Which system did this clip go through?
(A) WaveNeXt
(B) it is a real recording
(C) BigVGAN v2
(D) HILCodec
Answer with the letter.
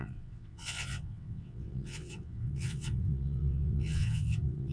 A